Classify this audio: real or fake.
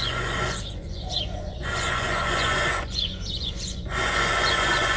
fake